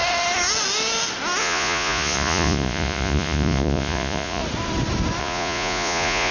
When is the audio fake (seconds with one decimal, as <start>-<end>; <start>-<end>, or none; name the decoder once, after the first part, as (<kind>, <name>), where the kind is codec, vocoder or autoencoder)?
1.4-4.4 (vocoder, Vocos); 5.2-6.3